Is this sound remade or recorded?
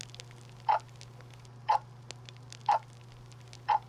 recorded